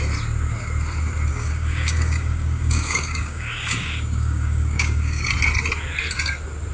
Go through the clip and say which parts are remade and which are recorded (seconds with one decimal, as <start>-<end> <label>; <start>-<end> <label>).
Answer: 0.0-1.3 recorded; 1.3-5.3 remade; 5.3-6.7 recorded